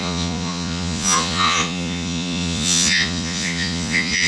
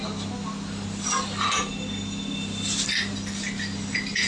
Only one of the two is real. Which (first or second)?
second